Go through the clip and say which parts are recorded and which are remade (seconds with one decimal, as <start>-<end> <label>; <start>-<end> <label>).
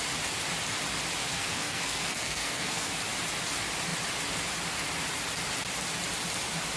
0.0-1.2 recorded; 1.2-2.9 remade; 2.9-6.8 recorded